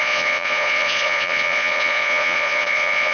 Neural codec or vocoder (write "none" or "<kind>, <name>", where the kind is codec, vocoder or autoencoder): vocoder, Vocos